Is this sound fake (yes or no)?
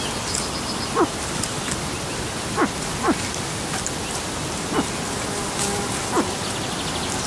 no